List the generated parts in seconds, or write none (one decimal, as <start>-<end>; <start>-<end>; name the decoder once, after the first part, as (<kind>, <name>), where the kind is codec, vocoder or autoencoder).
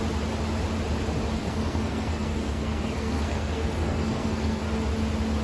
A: 1.4-4.6 (codec, SNAC)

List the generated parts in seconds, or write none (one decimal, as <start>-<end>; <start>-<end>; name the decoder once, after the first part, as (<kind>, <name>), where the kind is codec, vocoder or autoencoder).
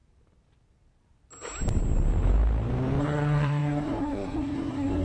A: 3.0-5.0 (codec, SNAC)